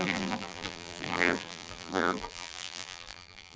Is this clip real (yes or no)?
no